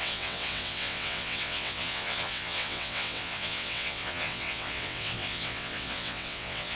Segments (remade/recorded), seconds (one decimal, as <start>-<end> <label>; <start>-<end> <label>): 0.0-6.8 remade